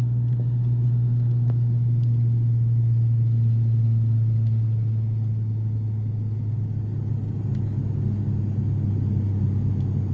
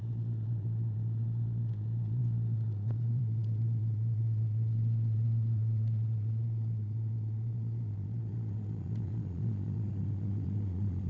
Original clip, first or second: first